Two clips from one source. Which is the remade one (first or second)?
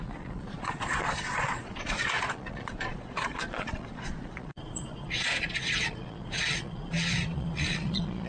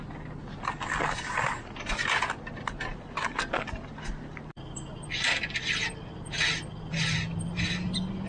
first